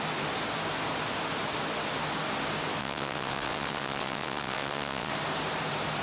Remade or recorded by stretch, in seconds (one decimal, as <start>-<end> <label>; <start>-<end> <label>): 0.0-2.8 recorded; 2.8-5.1 remade; 5.1-6.0 recorded